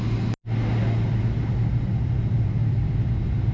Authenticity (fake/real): real